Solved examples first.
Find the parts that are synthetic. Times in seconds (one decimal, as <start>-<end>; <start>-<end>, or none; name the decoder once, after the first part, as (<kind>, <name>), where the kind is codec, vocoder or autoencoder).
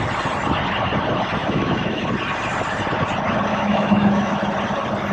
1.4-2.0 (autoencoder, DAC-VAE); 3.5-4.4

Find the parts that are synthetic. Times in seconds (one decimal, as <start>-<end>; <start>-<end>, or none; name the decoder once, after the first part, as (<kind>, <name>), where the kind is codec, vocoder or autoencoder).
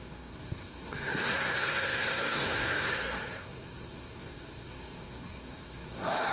0.0-6.3 (codec, SNAC)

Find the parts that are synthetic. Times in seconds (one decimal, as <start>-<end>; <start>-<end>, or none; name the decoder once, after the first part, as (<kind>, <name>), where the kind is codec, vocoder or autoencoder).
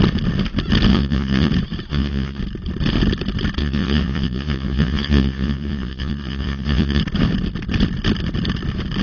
0.9-1.5 (vocoder, Vocos); 1.9-2.4; 3.6-7.0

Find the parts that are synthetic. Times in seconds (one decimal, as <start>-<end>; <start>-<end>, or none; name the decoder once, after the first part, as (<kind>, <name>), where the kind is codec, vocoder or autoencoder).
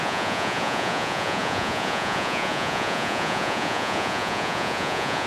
0.0-5.3 (vocoder, Vocos)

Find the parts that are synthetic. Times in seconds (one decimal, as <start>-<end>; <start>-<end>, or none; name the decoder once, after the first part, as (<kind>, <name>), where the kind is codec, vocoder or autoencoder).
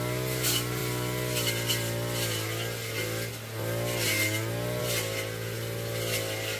none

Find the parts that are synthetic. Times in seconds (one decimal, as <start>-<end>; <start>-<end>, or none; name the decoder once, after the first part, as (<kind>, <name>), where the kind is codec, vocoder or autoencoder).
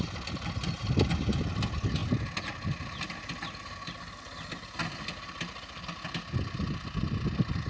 none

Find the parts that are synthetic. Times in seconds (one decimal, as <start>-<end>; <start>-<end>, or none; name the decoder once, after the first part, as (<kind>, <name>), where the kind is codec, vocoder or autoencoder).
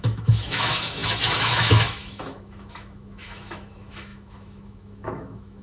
0.0-5.6 (autoencoder, DAC-VAE)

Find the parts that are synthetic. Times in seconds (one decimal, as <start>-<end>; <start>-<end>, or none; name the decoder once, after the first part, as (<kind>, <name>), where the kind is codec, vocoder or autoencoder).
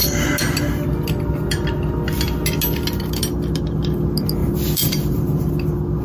4.4-5.5 (vocoder, BigVGAN v2)